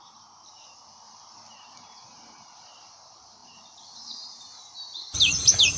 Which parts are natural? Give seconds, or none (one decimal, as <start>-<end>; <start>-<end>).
none